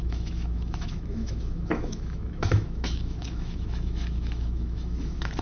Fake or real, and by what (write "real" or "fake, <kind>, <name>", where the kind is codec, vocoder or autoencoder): fake, autoencoder, DAC-VAE